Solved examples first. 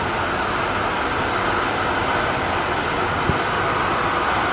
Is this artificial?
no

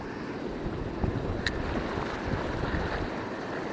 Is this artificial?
no